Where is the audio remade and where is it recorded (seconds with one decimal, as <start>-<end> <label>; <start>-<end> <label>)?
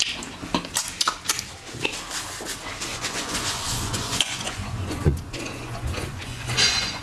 0.0-2.9 recorded; 2.9-7.0 remade